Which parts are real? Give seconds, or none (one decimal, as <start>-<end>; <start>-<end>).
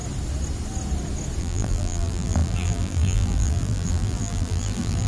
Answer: 0.0-1.4